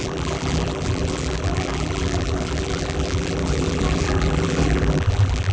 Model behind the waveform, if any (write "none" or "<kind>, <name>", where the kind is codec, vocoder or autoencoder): vocoder, BigVGAN v2